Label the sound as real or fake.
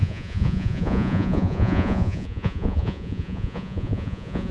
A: fake